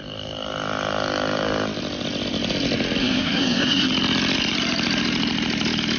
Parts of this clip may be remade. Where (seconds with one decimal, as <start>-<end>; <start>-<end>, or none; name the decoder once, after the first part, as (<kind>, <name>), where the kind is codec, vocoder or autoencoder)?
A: 3.0-3.9 (codec, SNAC)